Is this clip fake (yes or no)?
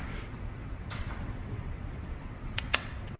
yes